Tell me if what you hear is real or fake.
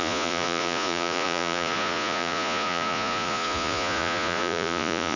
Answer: fake